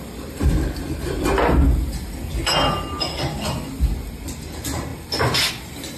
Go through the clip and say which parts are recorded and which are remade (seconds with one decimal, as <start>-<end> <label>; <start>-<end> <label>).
0.0-6.0 recorded